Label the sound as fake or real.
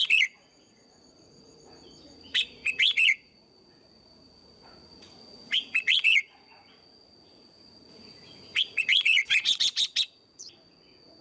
fake